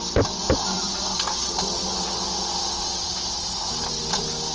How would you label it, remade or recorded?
recorded